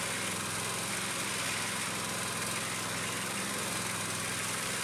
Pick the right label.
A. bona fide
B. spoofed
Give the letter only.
A